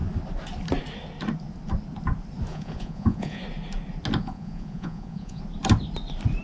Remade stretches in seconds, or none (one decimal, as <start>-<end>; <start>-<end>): 2.5-3.4; 4.2-5.4